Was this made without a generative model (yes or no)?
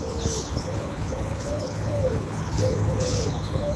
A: no